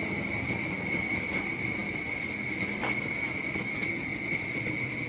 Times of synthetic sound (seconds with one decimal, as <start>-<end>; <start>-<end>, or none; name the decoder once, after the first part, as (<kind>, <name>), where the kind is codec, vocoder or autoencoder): 4.1-4.6 (vocoder, Vocos)